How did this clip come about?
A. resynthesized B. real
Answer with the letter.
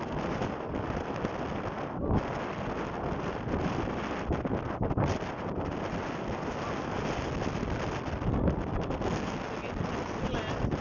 B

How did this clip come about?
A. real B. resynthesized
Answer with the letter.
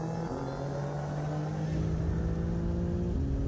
A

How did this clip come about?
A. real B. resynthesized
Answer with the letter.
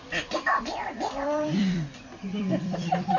B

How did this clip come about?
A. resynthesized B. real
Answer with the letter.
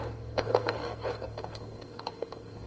A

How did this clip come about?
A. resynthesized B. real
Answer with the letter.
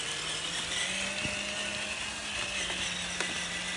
B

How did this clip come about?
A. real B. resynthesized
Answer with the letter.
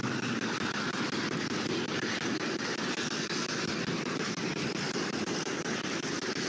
A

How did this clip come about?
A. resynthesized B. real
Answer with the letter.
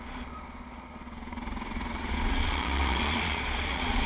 A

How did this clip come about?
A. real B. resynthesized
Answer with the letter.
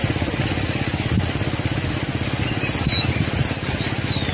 A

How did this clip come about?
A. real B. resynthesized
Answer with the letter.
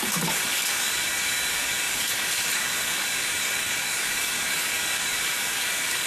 B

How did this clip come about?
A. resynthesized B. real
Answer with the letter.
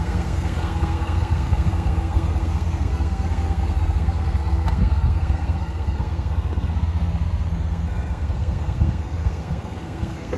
A